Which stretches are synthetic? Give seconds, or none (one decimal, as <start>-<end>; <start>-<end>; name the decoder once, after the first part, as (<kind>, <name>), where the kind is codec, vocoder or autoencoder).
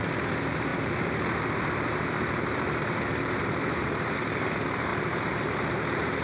0.0-6.2 (vocoder, BigVGAN v2)